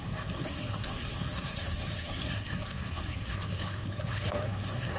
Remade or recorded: remade